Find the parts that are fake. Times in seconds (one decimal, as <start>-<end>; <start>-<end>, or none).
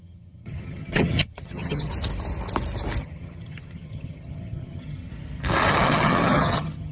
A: 0.0-1.9; 3.0-5.1; 5.7-6.9